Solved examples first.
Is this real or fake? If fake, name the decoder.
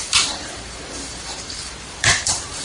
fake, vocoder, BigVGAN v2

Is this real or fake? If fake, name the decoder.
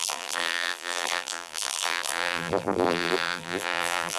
fake, vocoder, BigVGAN v2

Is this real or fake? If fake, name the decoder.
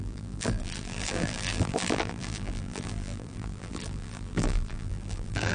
fake, vocoder, BigVGAN v2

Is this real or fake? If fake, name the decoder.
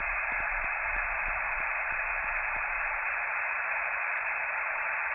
fake, vocoder, BigVGAN v2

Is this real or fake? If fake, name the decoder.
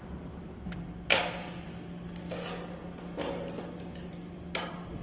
real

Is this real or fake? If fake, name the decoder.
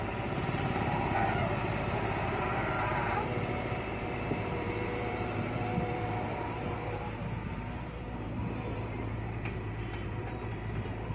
fake, vocoder, BigVGAN v2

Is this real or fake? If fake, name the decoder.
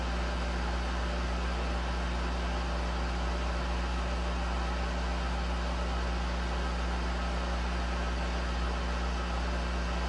real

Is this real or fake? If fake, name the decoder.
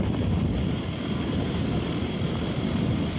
fake, vocoder, BigVGAN v2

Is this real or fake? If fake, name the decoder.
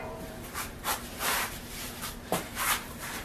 fake, vocoder, BigVGAN v2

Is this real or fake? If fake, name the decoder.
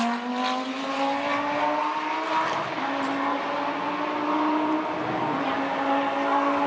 real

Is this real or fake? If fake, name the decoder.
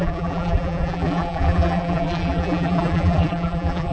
fake, vocoder, BigVGAN v2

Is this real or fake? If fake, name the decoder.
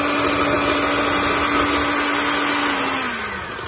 real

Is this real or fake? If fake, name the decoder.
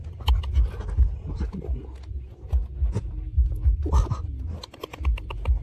real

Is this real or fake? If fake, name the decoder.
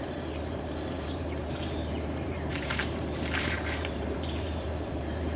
fake, vocoder, BigVGAN v2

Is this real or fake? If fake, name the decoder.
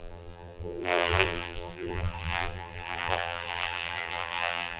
fake, vocoder, BigVGAN v2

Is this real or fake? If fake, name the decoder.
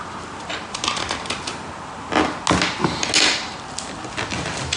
real